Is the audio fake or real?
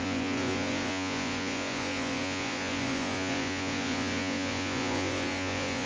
fake